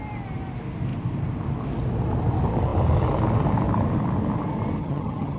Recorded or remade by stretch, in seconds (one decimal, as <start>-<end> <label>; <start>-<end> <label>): 0.0-4.8 recorded; 4.8-5.4 remade